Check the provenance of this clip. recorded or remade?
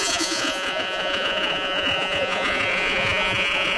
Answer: remade